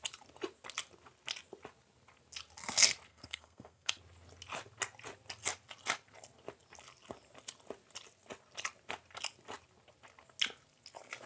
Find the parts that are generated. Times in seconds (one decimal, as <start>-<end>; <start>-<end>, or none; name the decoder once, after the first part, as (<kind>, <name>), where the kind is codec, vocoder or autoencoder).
3.1-4.0 (codec, SNAC)